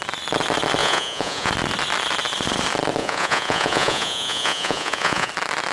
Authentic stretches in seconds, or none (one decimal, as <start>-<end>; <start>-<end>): 0.0-0.8; 1.5-3.0; 5.3-5.7